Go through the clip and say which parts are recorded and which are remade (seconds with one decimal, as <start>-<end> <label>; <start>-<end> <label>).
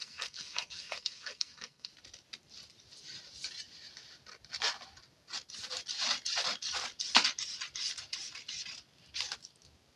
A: 0.0-1.9 remade; 1.9-10.0 recorded